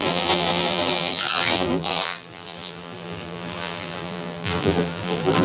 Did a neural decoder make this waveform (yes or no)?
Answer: yes